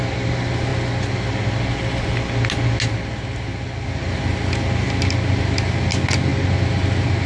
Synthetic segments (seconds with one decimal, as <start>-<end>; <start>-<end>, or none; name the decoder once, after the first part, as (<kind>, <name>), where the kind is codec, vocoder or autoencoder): none